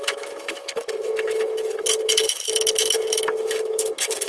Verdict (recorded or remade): remade